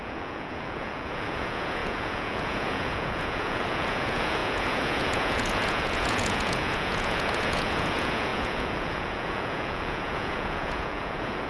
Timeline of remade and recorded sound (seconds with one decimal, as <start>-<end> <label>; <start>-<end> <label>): 0.0-11.5 remade